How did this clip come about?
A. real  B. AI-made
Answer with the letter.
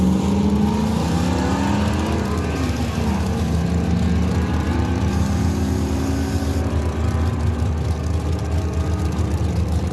A